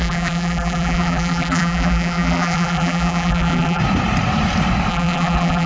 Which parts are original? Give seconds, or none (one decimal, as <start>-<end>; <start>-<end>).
3.8-4.9